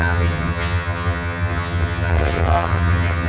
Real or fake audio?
fake